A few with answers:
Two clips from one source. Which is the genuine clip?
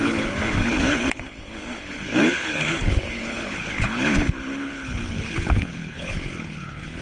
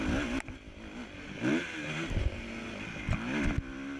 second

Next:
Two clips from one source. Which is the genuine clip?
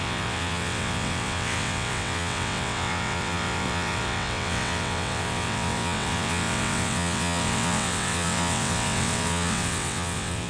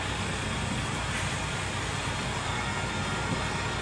second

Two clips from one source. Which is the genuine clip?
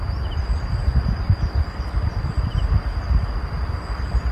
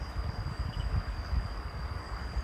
first